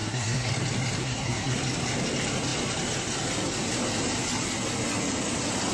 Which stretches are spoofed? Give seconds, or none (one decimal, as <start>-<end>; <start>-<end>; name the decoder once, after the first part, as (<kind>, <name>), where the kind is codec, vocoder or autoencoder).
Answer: 0.0-0.5 (codec, SNAC); 1.0-1.6